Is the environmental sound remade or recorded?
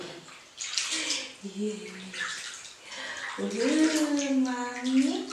recorded